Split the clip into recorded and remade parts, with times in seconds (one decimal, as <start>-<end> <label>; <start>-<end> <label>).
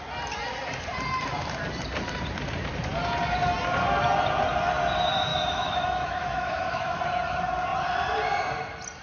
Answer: 0.0-5.3 recorded; 5.3-7.0 remade; 7.0-9.0 recorded